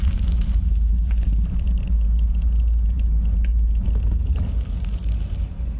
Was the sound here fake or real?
real